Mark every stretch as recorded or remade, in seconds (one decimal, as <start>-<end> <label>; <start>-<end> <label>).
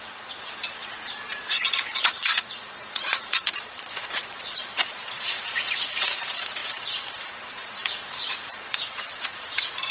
0.0-9.9 remade